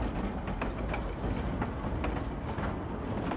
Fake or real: real